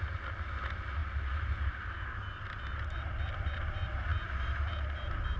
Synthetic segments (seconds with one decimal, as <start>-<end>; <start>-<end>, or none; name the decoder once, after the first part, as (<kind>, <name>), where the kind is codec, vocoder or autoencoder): none